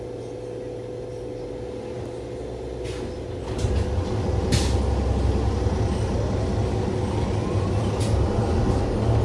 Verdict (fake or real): real